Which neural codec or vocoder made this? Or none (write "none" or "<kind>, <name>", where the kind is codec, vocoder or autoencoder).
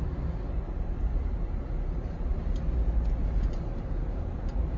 none